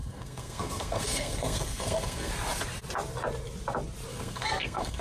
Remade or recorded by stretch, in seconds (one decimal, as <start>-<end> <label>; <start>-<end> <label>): 0.0-2.3 remade; 2.3-4.1 recorded; 4.1-5.0 remade